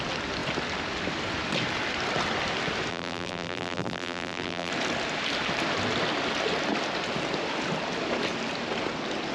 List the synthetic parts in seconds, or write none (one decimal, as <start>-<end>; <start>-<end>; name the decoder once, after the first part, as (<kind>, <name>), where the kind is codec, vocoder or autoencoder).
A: 2.9-4.7 (vocoder, BigVGAN v2)

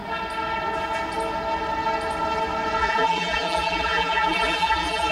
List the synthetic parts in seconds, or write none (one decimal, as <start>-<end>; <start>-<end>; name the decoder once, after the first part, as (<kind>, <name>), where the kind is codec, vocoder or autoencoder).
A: 2.8-5.1 (vocoder, BigVGAN v2)